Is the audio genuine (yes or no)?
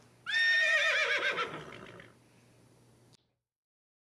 yes